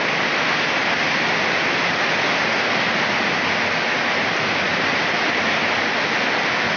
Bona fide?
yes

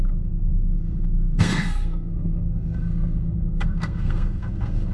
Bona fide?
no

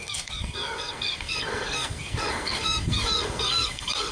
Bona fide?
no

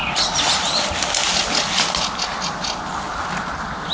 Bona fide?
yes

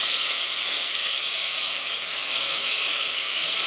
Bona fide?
no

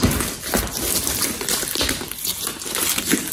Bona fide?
yes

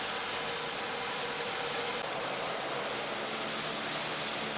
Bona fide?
yes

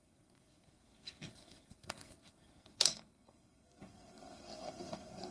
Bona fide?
no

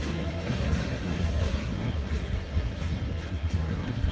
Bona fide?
no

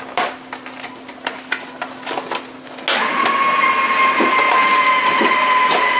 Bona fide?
yes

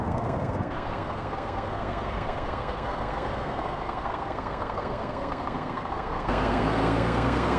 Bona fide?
no